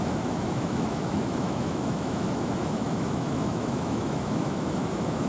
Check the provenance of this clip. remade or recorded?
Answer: remade